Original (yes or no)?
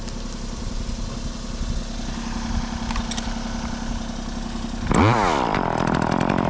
yes